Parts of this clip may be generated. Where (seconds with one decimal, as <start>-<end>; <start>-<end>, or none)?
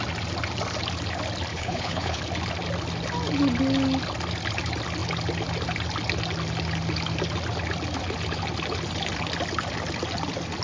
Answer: 1.5-2.2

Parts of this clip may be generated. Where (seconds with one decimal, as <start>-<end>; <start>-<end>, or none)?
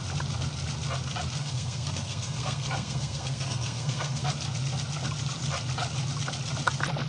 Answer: 1.4-4.3